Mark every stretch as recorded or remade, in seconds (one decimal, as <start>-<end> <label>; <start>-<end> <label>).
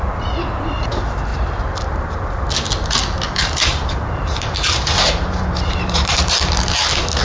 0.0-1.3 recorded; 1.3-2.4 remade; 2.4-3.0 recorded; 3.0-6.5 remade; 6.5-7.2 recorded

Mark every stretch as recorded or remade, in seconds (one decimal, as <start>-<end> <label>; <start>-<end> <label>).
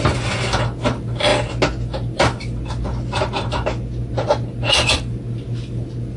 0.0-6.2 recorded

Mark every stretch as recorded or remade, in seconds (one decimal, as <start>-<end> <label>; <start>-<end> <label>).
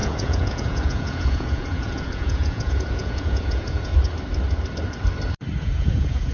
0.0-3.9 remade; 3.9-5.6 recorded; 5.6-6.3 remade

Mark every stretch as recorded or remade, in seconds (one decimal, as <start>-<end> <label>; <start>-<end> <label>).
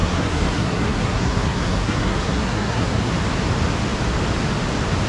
0.0-3.1 remade; 3.1-5.1 recorded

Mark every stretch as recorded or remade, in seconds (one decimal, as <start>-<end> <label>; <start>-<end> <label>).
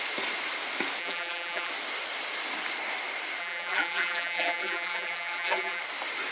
0.0-1.0 recorded; 1.0-1.7 remade; 1.7-3.4 recorded; 3.4-5.8 remade; 5.8-6.3 recorded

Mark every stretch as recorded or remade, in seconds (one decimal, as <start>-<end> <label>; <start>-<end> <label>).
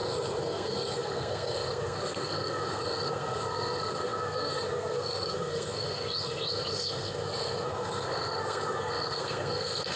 0.0-10.0 remade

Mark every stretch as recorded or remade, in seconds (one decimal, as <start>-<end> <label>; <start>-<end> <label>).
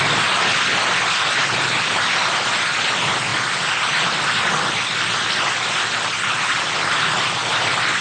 0.0-8.0 recorded